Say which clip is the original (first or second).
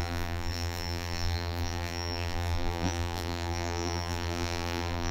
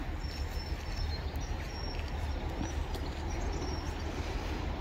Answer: second